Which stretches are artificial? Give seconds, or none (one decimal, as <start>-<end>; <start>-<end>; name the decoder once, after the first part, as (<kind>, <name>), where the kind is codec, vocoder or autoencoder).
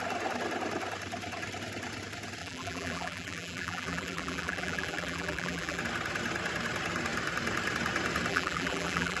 2.4-5.8 (vocoder, BigVGAN v2); 8.3-9.2